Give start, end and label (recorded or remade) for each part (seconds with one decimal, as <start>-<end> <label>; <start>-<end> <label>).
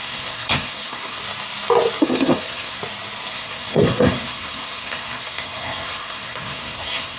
0.0-1.2 remade; 1.2-2.0 recorded; 2.0-2.8 remade; 2.8-3.3 recorded; 3.3-7.2 remade